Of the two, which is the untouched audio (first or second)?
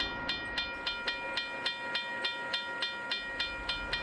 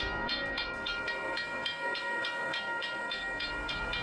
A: first